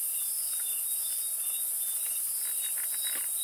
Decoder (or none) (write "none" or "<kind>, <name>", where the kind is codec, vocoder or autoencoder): none